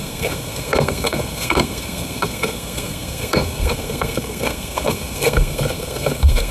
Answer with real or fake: fake